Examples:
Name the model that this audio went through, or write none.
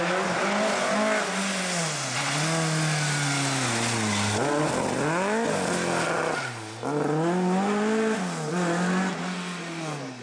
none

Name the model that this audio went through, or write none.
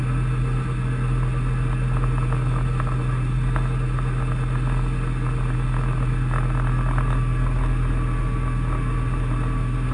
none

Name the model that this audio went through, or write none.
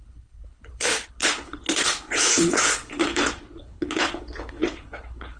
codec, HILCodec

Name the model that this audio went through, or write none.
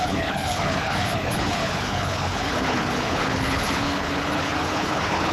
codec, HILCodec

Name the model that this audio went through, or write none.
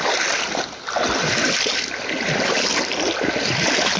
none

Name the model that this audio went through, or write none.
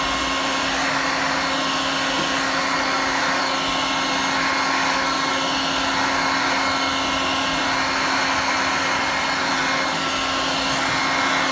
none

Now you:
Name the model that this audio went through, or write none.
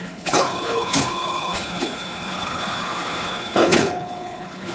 codec, HILCodec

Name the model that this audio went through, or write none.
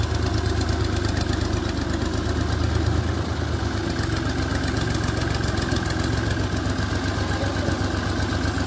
none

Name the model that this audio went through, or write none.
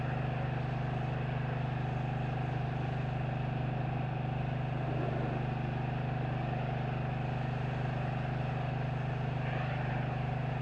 none